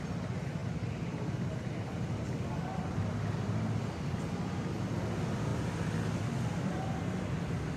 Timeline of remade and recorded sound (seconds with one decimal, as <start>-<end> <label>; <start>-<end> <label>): 0.0-7.8 recorded